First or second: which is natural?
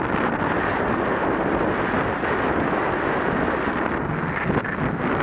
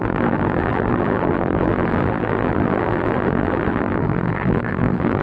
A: first